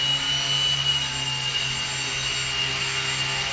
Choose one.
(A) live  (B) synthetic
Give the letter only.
A